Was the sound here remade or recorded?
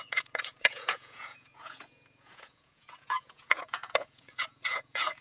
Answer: remade